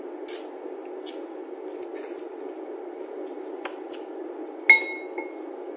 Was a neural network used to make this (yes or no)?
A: no